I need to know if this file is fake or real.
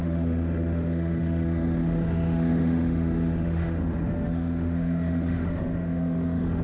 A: fake